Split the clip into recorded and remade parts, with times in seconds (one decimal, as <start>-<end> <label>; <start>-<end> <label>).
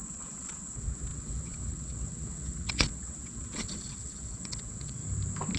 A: 0.0-5.0 remade; 5.0-5.6 recorded